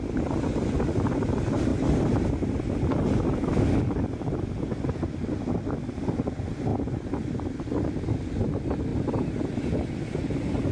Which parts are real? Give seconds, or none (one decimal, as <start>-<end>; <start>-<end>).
0.0-10.7